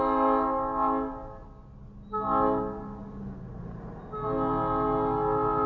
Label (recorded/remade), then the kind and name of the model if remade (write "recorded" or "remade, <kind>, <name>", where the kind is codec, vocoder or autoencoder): recorded